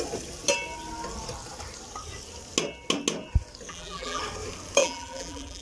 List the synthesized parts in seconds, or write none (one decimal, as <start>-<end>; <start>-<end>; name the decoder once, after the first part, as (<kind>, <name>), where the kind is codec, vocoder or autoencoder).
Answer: 3.7-4.2 (vocoder, BigVGAN v2); 4.8-5.6